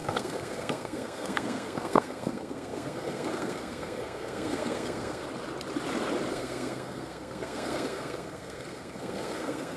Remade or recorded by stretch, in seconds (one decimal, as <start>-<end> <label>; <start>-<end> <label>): 0.0-5.2 remade; 5.2-6.3 recorded; 6.3-9.8 remade